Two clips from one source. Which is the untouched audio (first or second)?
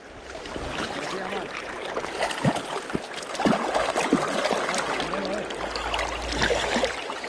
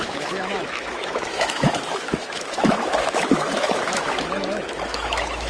first